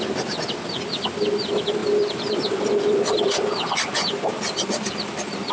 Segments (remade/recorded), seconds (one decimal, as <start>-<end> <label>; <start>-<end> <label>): 0.0-1.8 recorded; 1.8-2.7 remade; 2.7-4.3 recorded; 4.3-5.5 remade